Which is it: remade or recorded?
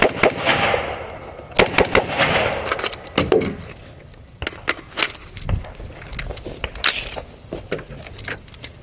recorded